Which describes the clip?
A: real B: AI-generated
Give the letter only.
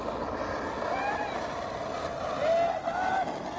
A